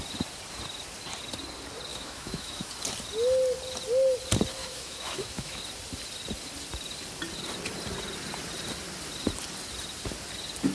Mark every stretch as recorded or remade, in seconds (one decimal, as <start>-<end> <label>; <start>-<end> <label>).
0.0-1.9 recorded; 1.9-2.7 remade; 2.7-4.6 recorded; 4.6-5.6 remade; 5.6-10.7 recorded